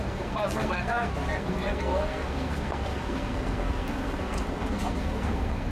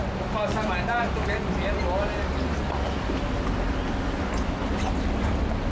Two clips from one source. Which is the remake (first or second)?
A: first